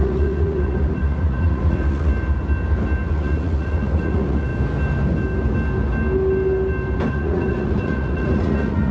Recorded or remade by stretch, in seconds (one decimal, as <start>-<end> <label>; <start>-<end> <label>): 0.0-2.1 remade; 2.1-3.1 recorded; 3.1-4.5 remade; 4.5-7.1 recorded; 7.1-8.9 remade